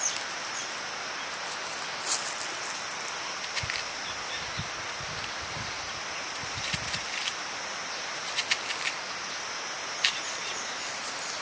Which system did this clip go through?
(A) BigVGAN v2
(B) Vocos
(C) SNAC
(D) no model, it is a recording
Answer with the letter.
D